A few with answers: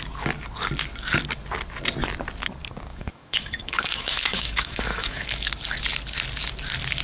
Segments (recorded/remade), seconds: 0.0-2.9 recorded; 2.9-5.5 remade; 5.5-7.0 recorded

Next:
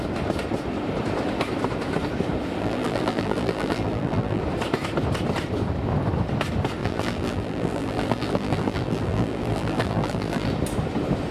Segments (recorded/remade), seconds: 0.0-2.6 recorded; 2.6-4.4 remade; 4.4-6.8 recorded; 6.8-10.5 remade; 10.5-11.3 recorded

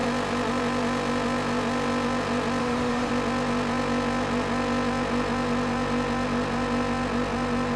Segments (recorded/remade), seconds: 0.0-2.6 recorded; 2.6-3.1 remade; 3.1-7.8 recorded

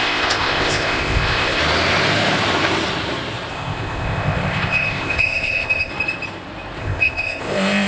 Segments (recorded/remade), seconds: 0.0-1.6 remade; 1.6-3.5 recorded; 3.5-5.9 remade; 5.9-6.8 recorded; 6.8-7.9 remade

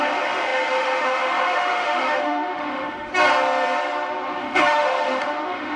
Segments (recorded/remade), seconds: 0.0-3.1 remade; 3.1-4.4 recorded; 4.4-5.8 remade

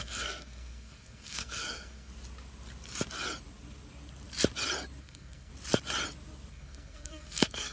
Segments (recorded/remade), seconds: 0.0-2.1 remade; 2.1-5.0 recorded; 5.0-5.5 remade; 5.5-6.5 recorded; 6.5-7.7 remade

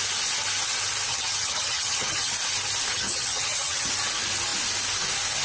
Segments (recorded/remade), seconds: 0.0-1.1 recorded; 1.1-2.3 remade; 2.3-2.9 recorded; 2.9-3.9 remade; 3.9-5.4 recorded